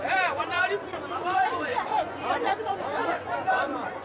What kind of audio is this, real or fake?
fake